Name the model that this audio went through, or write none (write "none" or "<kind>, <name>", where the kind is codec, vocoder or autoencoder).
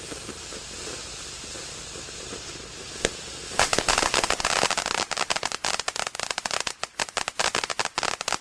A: none